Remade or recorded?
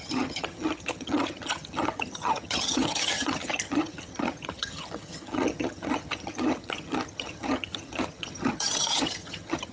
remade